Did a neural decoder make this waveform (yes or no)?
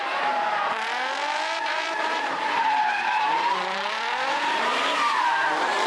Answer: yes